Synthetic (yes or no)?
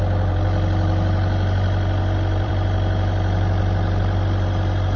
yes